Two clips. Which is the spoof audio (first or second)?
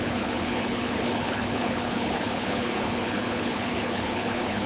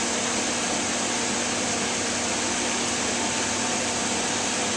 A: first